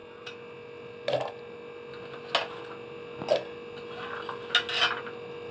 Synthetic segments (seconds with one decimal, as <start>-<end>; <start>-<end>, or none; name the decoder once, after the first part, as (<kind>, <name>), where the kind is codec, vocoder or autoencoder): none